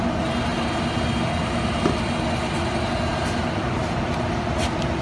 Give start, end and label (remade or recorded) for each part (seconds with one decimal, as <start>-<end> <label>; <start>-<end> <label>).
0.0-5.0 recorded